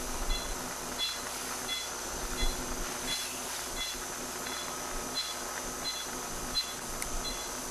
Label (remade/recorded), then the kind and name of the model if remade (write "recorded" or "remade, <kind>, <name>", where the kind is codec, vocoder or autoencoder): recorded